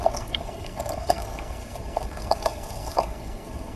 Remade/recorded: remade